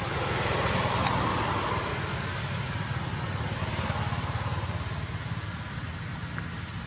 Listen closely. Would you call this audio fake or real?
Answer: real